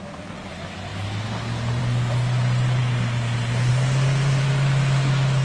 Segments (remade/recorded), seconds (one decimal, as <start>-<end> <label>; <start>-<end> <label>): 0.0-5.4 recorded